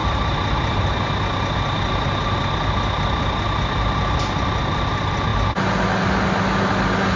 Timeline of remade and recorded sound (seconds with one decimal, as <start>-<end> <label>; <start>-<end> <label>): 0.0-7.2 recorded